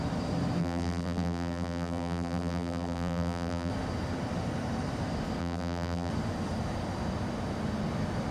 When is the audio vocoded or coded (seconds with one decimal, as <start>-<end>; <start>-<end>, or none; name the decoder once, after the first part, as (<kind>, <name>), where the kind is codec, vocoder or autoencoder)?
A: 0.6-3.7 (vocoder, BigVGAN v2); 5.4-6.1

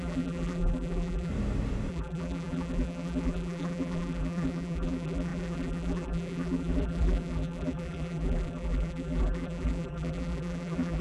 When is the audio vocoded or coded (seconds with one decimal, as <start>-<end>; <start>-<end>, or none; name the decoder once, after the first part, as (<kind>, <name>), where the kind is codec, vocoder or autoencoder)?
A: 0.0-1.3 (vocoder, BigVGAN v2); 1.9-11.0

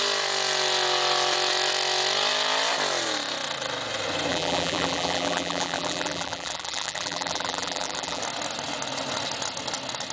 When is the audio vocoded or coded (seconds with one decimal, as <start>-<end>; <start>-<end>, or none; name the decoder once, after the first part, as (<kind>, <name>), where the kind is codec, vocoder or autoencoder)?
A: 4.3-8.2 (vocoder, BigVGAN v2)

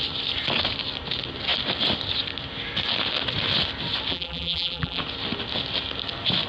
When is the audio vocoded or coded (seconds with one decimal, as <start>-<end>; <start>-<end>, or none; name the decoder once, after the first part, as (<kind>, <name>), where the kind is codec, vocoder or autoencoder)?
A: 4.1-5.0 (vocoder, BigVGAN v2)